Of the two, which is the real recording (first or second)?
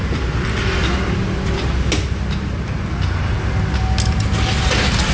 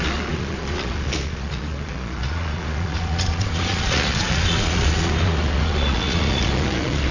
first